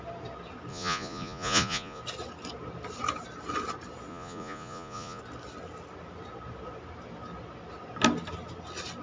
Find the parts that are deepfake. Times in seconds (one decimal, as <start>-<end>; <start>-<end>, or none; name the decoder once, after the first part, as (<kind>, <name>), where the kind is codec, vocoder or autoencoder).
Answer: 0.7-2.0 (vocoder, Vocos); 4.1-5.2